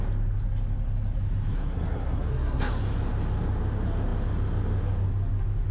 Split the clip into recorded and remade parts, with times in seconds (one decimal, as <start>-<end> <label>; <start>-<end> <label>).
0.0-1.5 recorded; 1.5-2.7 remade; 2.7-5.7 recorded